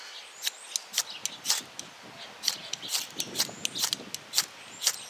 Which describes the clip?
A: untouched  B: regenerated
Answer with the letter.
A